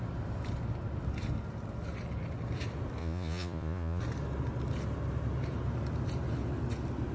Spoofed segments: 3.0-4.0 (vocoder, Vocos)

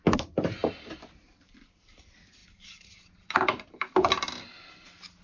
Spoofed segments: 0.6-1.7 (vocoder, BigVGAN v2); 2.4-3.8

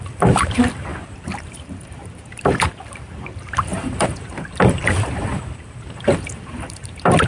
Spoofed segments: 0.0-0.9 (vocoder, BigVGAN v2); 1.4-7.3